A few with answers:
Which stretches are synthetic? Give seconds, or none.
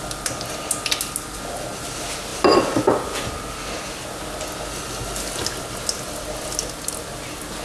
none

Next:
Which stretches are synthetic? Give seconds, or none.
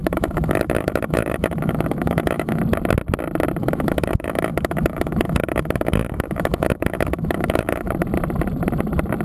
0.0-2.6 (autoencoder, DAC-VAE); 3.6-7.9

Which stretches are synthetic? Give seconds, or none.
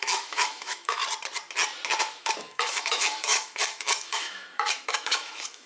0.0-1.0 (autoencoder, DAC-VAE); 2.0-5.7